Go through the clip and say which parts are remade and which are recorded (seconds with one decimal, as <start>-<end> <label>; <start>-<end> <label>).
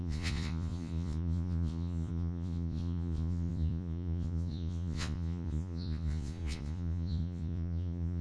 0.0-8.2 remade